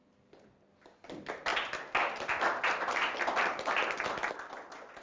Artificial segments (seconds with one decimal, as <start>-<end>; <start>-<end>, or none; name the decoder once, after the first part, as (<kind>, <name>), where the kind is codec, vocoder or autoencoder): none